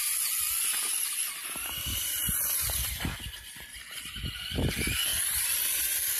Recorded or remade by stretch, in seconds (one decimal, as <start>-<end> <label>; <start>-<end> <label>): 0.0-1.4 recorded; 1.4-3.0 remade; 3.0-5.1 recorded; 5.1-5.8 remade; 5.8-6.2 recorded